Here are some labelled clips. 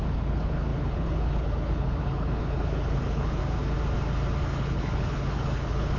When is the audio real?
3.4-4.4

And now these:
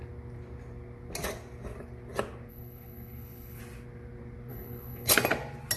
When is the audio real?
0.0-2.5; 3.6-4.5; 5.1-5.8

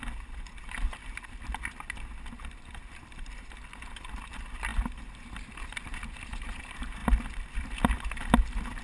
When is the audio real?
0.0-8.8

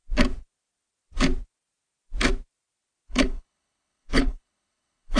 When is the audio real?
0.0-3.1

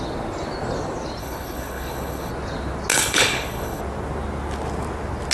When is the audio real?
0.0-1.2; 2.3-2.9; 3.8-5.3